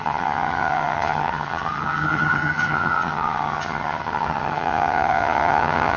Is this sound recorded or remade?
remade